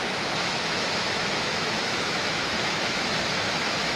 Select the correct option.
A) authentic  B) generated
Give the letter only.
B